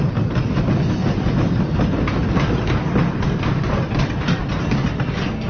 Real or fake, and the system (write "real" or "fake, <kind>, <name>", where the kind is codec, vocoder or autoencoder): real